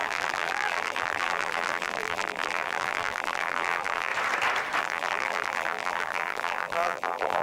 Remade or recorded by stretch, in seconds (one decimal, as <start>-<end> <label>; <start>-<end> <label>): 0.0-4.1 remade; 4.1-4.8 recorded; 4.8-7.4 remade